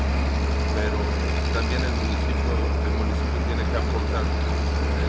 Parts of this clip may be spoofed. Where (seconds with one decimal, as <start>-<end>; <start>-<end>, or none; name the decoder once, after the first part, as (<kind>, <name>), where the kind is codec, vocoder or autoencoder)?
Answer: none